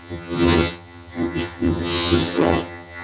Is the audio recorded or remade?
remade